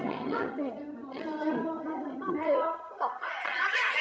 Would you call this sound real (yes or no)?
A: no